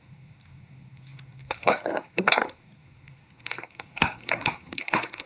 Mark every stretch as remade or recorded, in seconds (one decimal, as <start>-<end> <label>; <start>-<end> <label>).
0.0-5.3 remade